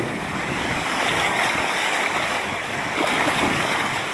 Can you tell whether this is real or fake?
fake